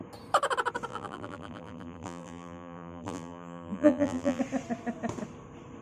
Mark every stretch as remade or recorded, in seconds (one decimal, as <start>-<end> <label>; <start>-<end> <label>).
0.0-0.9 recorded; 0.9-4.4 remade; 4.4-5.8 recorded